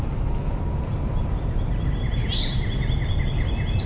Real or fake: real